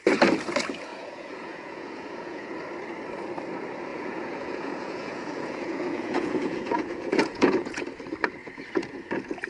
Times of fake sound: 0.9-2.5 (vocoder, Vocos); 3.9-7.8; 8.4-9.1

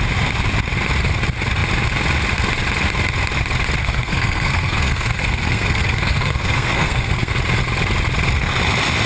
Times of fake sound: 3.8-7.3 (codec, SNAC)

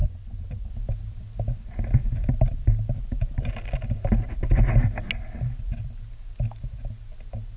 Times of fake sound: 0.0-0.7 (vocoder, Vocos)

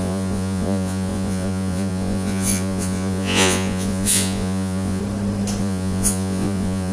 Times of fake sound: 0.0-5.0 (vocoder, Vocos); 5.6-6.9

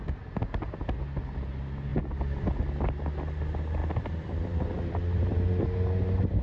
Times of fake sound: 1.9-2.6 (vocoder, BigVGAN v2); 3.8-5.3

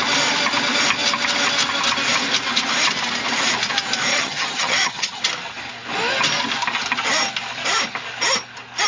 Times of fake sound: 4.1-5.2 (vocoder, HiFi-GAN)